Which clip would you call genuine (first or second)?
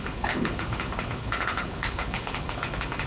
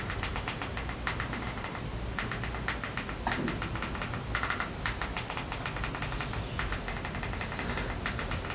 second